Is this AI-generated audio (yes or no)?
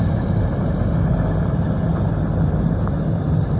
no